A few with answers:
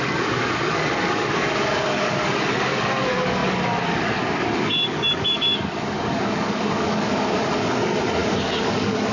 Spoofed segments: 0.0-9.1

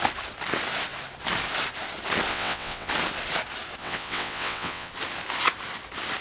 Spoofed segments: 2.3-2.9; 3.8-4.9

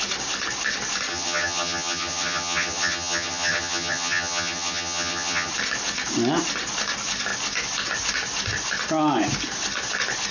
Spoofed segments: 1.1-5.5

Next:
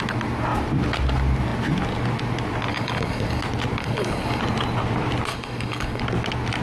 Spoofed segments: 2.7-3.4; 3.8-4.4; 5.3-6.0

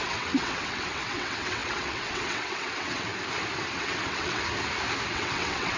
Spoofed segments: 0.0-3.1; 3.8-4.4; 5.1-5.8

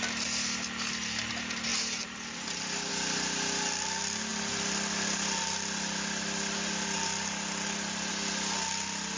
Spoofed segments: 1.7-2.9

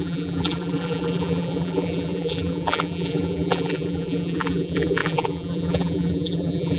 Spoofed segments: 0.0-6.8